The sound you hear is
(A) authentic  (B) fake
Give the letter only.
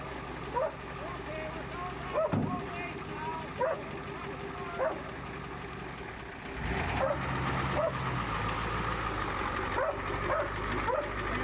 A